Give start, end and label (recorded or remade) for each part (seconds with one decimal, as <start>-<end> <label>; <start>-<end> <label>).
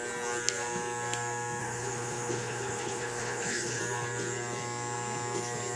0.0-1.6 recorded; 1.6-3.8 remade; 3.8-5.7 recorded